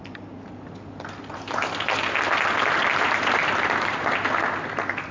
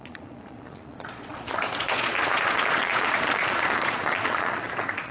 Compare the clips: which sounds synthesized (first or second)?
second